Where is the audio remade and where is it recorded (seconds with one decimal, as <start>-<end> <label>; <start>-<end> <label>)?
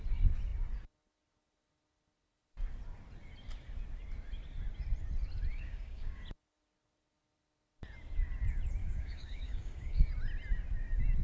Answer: 0.0-5.5 recorded; 5.5-6.2 remade; 6.2-8.8 recorded; 8.8-10.1 remade; 10.1-11.2 recorded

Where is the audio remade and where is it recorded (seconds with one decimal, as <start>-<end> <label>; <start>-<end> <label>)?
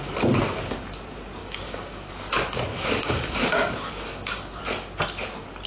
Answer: 0.0-1.4 recorded; 1.4-2.1 remade; 2.1-2.7 recorded; 2.7-4.6 remade; 4.6-5.7 recorded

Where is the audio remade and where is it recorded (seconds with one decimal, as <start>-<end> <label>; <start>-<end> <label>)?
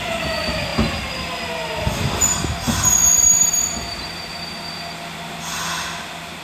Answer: 0.0-6.4 recorded